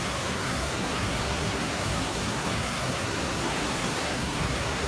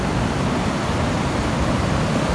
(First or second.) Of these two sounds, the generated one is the first